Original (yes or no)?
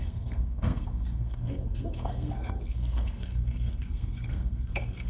no